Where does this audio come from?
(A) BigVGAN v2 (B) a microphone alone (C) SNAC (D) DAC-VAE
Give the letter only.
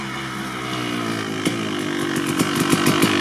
B